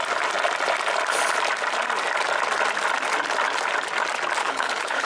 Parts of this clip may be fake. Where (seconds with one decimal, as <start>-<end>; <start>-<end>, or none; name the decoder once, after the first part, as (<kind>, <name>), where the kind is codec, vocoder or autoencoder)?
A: 4.4-5.1 (codec, HILCodec)